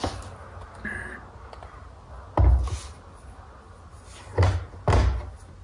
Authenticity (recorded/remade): recorded